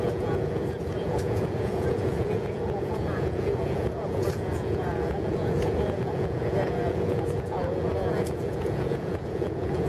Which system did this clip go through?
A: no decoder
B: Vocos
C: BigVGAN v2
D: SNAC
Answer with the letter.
B